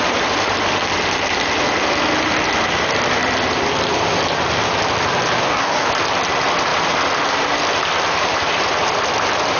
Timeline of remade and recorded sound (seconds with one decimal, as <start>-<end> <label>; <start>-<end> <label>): 0.0-5.4 recorded; 5.4-5.9 remade; 5.9-9.6 recorded